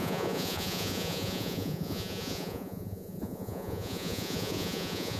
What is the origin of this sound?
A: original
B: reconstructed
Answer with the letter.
B